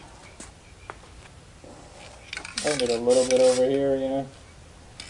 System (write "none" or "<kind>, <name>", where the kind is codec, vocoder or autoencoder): none